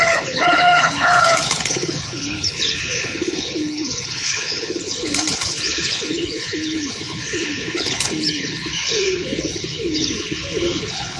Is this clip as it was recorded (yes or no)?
no